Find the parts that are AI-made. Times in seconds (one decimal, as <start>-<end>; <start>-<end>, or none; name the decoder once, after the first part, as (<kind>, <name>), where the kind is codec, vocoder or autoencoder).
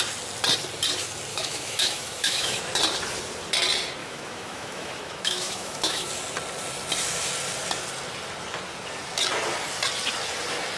1.3-2.6 (autoencoder, DAC-VAE); 4.0-6.1